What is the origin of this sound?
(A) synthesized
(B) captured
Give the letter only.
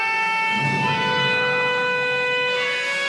A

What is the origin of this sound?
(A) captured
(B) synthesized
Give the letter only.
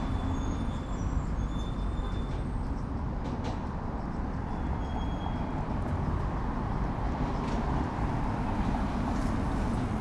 A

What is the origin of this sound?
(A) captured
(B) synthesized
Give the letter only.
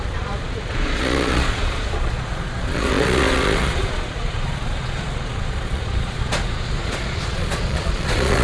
B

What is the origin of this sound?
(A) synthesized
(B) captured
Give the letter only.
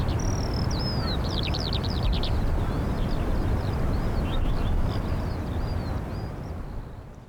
A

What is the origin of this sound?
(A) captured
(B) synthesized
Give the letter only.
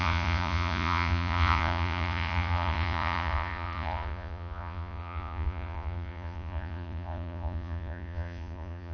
B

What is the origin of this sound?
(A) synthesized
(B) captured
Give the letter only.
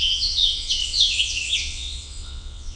A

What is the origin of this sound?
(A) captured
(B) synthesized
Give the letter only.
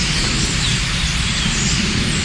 A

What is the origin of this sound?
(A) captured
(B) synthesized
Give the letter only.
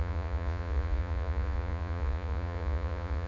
B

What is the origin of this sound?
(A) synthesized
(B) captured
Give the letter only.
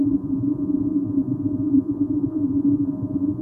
A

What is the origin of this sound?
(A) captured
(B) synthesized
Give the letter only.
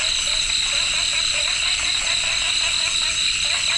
A